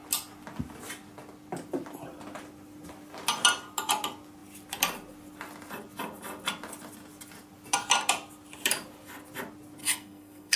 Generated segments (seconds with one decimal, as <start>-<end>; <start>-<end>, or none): 9.8-10.6

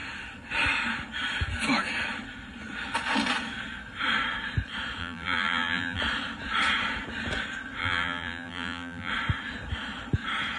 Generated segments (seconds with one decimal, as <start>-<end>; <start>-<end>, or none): 5.0-6.0; 7.8-9.1

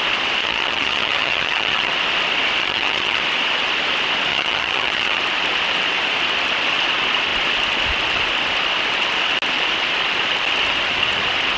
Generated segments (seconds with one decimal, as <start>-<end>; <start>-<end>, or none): 0.4-1.9; 2.6-3.2; 4.3-5.2